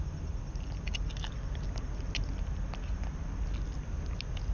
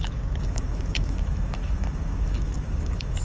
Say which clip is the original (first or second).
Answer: first